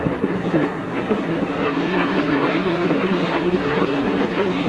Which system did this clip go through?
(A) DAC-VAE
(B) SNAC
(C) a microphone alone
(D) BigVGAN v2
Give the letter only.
B